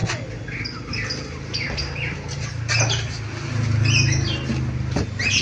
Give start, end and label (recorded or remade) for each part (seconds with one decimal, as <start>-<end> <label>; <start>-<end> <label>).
0.0-5.4 recorded

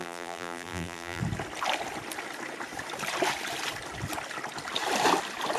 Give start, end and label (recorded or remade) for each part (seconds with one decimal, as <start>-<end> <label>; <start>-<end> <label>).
0.0-1.2 remade; 1.2-5.6 recorded

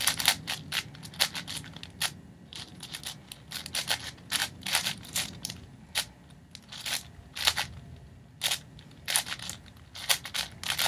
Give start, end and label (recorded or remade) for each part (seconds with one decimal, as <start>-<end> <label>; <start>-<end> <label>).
0.0-2.5 recorded; 2.5-3.0 remade; 3.0-4.4 recorded; 4.4-5.9 remade; 5.9-10.9 recorded